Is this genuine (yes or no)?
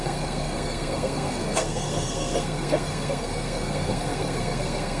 no